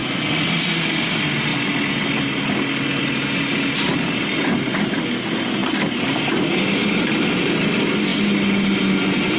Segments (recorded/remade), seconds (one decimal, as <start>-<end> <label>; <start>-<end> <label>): 0.0-0.6 remade; 0.6-9.4 recorded